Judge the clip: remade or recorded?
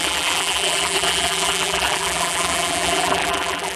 remade